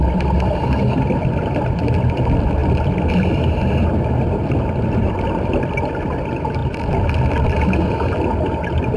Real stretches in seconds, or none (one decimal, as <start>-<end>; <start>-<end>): 0.0-9.0